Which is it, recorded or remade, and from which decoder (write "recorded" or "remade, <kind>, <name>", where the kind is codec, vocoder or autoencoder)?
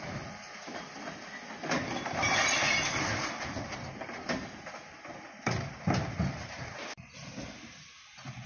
recorded